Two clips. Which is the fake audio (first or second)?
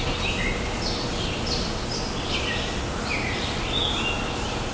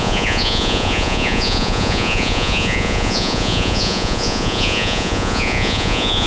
second